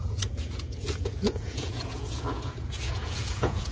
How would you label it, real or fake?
fake